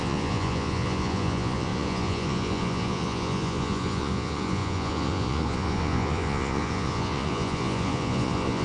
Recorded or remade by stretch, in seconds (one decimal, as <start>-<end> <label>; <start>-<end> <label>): 0.0-8.6 remade